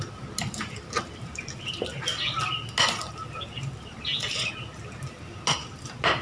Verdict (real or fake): real